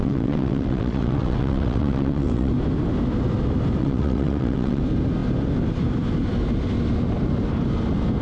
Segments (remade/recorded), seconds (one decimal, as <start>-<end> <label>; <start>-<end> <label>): 0.0-2.5 remade; 2.5-3.8 recorded; 3.8-4.8 remade; 4.8-8.2 recorded